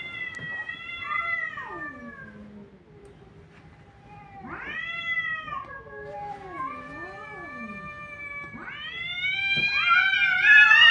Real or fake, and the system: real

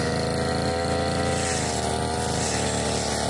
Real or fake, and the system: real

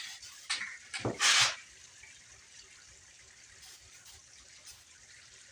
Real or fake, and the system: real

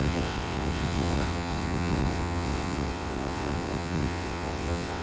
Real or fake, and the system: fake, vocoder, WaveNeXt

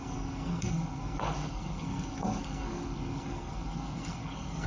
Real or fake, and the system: fake, codec, SNAC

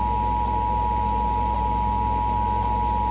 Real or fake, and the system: real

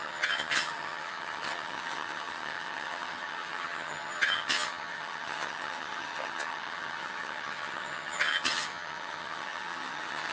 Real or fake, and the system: fake, vocoder, HiFi-GAN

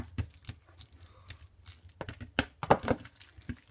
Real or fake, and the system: real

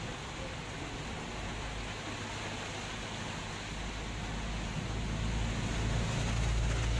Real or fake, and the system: real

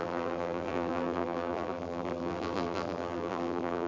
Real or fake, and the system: fake, vocoder, BigVGAN v2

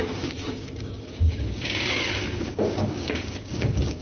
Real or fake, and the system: fake, codec, DAC